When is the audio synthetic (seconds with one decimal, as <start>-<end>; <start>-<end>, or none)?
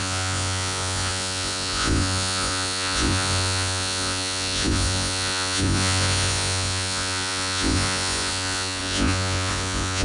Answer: 0.0-10.0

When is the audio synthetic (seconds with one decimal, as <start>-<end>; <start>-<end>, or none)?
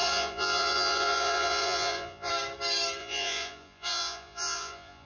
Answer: 0.0-2.3; 3.0-5.1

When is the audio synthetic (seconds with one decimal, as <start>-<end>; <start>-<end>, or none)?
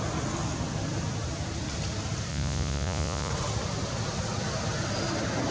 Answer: 2.3-3.3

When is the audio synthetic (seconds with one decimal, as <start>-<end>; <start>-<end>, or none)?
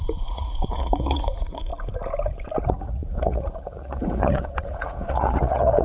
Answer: 0.0-1.7; 2.6-5.8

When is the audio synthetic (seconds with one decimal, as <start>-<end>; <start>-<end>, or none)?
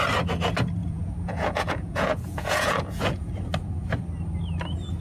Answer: 0.8-3.3